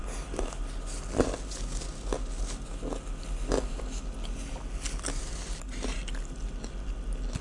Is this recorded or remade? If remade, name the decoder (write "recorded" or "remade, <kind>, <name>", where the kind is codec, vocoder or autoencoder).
recorded